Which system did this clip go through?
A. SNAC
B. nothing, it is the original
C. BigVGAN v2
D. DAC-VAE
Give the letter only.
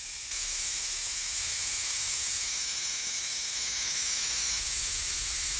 D